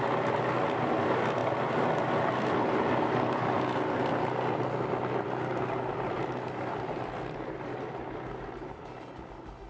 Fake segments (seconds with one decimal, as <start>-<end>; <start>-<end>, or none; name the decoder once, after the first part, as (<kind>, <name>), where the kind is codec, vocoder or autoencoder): none